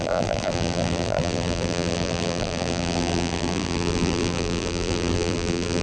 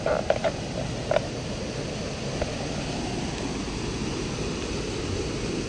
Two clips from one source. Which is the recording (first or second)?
second